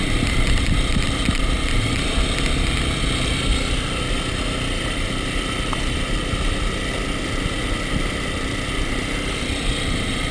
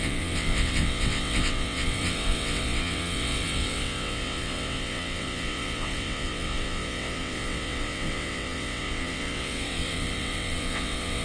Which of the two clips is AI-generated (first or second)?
second